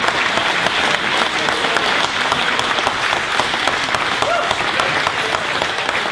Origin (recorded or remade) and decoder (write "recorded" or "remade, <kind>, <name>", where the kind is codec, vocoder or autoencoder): recorded